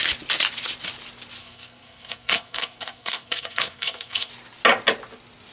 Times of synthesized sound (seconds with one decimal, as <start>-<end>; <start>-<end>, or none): 1.4-4.3